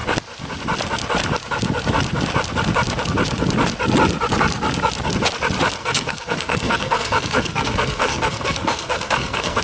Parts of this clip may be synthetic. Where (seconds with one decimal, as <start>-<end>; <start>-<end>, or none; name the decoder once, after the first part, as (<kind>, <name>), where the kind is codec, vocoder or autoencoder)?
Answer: 5.8-9.6 (codec, SNAC)